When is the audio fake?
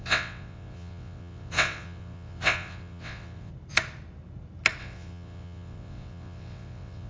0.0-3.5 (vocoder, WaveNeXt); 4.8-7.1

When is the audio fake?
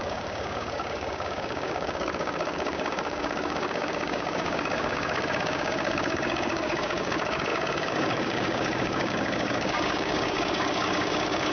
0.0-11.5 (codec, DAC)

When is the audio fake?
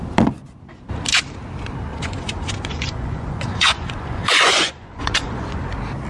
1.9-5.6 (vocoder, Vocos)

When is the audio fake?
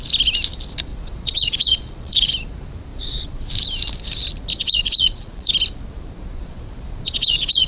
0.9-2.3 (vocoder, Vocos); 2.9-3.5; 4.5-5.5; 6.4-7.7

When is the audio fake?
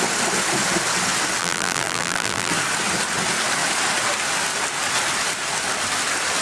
1.4-2.5 (vocoder, BigVGAN v2)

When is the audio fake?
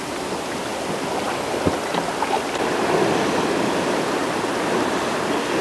4.2-5.6 (vocoder, BigVGAN v2)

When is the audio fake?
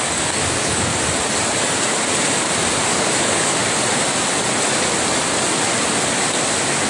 0.0-0.9 (codec, DAC); 2.9-3.6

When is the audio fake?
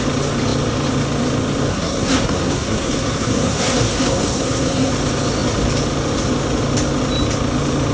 1.7-4.9 (codec, SNAC)